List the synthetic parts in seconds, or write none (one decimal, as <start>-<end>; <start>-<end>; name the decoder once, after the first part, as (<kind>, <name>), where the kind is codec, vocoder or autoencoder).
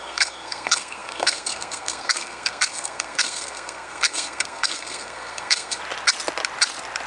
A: 0.0-5.8 (codec, SNAC)